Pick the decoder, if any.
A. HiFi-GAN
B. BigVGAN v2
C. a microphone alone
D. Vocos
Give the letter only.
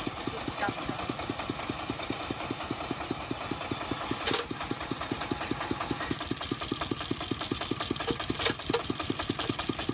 C